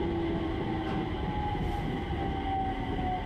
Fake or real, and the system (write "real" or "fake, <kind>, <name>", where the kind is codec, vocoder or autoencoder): real